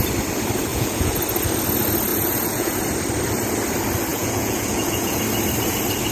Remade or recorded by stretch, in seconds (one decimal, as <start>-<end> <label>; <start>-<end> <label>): 0.0-0.7 recorded; 0.7-1.2 remade; 1.2-2.1 recorded; 2.1-2.7 remade; 2.7-4.1 recorded; 4.1-5.2 remade; 5.2-6.1 recorded